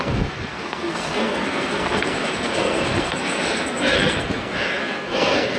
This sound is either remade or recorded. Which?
remade